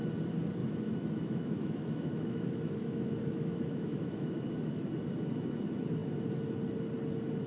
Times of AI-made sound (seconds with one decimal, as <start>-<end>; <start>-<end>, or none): 0.6-4.9